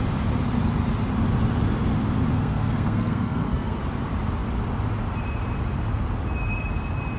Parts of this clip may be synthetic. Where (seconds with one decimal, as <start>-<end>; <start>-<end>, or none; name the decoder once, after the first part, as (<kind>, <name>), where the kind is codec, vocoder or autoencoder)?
2.3-3.8 (codec, SNAC)